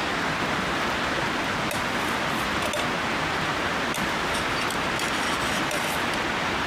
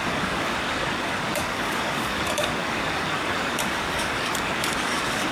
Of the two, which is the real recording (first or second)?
first